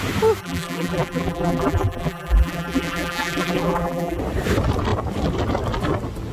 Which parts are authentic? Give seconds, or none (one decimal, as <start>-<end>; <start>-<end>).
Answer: 0.0-0.4; 4.2-6.3

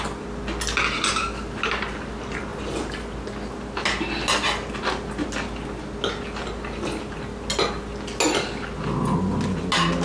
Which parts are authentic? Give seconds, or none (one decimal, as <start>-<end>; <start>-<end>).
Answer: 0.0-10.0